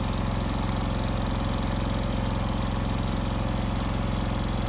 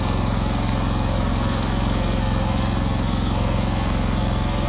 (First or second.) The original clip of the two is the first